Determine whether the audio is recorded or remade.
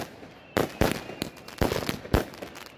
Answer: recorded